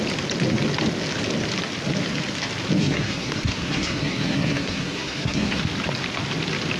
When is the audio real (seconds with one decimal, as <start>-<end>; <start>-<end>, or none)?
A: 0.0-2.8; 5.6-6.8